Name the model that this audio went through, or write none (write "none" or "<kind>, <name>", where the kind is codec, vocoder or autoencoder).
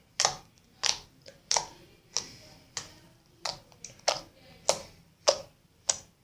none